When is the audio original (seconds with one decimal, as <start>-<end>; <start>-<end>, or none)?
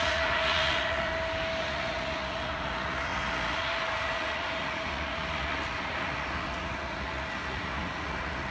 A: 1.1-1.6